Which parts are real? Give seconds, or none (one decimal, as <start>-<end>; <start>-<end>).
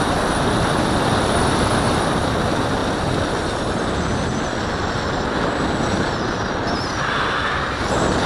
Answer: 0.0-8.3